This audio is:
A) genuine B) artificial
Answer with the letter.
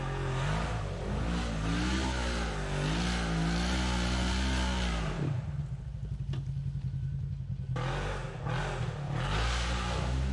A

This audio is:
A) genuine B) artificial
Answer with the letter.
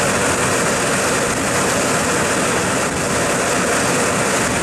A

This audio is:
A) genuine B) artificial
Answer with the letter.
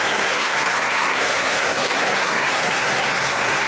B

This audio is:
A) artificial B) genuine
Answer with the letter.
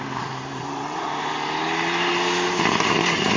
B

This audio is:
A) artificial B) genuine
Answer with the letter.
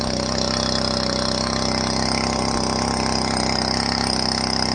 B